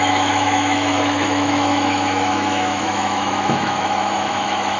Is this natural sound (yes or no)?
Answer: no